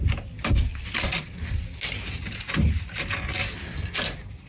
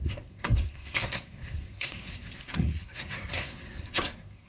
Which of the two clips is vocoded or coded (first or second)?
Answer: second